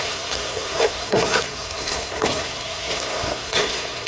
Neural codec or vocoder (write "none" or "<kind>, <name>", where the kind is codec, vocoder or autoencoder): codec, SNAC